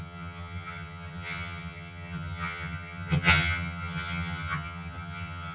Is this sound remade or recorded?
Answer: remade